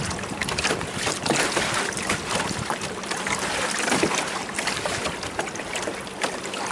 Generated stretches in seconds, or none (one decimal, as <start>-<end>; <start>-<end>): 0.0-0.4; 4.4-6.7